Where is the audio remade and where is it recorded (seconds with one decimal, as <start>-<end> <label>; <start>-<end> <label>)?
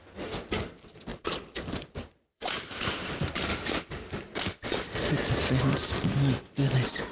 0.0-1.1 recorded; 1.1-3.1 remade; 3.1-7.1 recorded